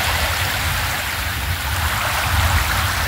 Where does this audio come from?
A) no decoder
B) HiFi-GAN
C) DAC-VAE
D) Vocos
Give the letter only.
A